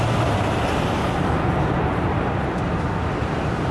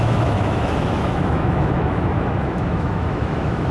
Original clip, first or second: first